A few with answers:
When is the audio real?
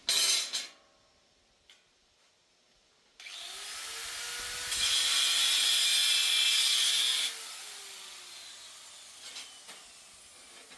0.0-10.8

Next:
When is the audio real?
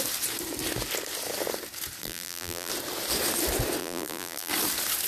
0.0-2.0; 2.7-3.8; 4.5-5.1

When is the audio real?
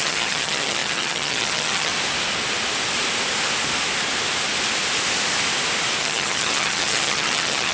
1.9-6.0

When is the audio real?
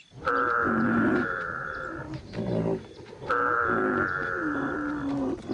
0.0-0.6; 3.3-4.2; 4.9-5.5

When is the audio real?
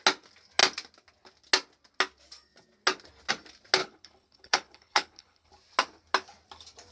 0.0-3.8; 5.5-6.9